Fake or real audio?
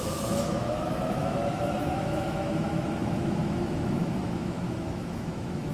fake